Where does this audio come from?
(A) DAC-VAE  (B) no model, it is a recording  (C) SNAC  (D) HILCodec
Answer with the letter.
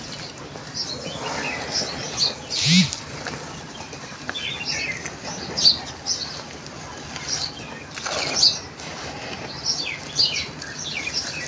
B